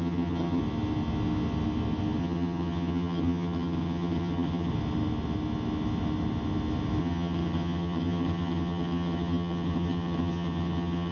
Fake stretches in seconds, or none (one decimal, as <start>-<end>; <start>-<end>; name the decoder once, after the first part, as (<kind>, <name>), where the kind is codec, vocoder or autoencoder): 0.0-0.6 (vocoder, HiFi-GAN); 2.2-4.7; 7.0-11.1